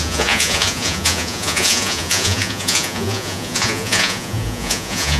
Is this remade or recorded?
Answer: remade